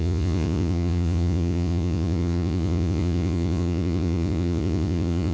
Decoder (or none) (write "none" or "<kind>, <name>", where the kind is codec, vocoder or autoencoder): vocoder, Vocos